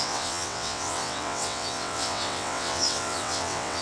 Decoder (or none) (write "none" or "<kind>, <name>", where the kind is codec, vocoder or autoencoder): vocoder, WaveNeXt